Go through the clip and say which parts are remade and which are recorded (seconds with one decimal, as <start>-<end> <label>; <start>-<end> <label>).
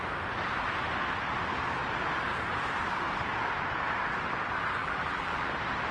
0.0-4.8 recorded; 4.8-5.5 remade; 5.5-5.9 recorded